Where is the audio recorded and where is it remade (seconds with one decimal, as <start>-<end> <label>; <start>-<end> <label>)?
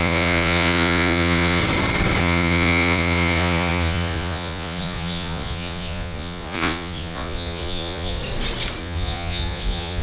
0.0-1.6 remade; 1.6-2.2 recorded; 2.2-8.2 remade; 8.2-8.8 recorded; 8.8-10.0 remade